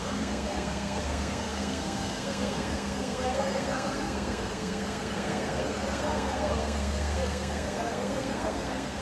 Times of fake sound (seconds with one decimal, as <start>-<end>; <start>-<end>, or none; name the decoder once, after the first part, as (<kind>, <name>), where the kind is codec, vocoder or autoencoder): 0.0-9.0 (codec, SNAC)